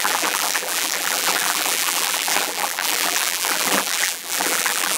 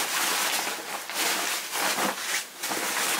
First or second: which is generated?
first